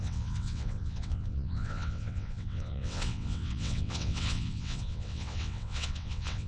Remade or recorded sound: remade